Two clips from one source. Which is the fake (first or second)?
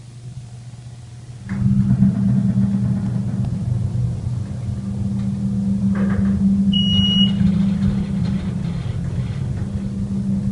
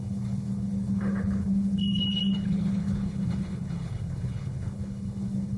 second